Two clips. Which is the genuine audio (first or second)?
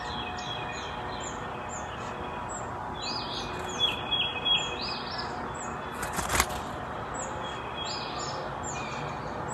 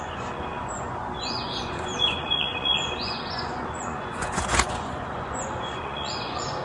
first